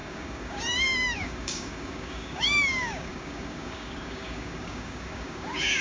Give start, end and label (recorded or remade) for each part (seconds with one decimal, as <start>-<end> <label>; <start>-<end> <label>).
0.0-5.8 remade